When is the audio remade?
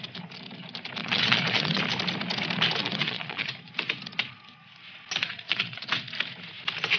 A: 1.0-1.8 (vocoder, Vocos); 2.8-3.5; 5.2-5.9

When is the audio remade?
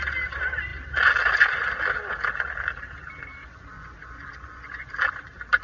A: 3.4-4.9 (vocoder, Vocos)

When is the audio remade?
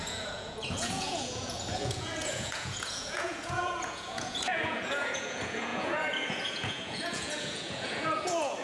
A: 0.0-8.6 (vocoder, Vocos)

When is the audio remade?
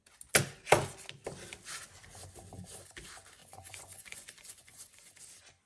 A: 3.4-5.1 (vocoder, Vocos)